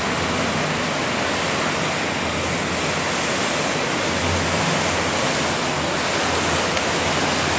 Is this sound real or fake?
real